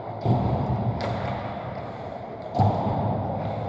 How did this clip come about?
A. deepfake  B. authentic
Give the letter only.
B